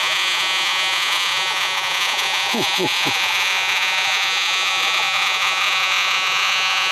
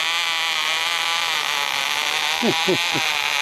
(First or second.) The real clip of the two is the second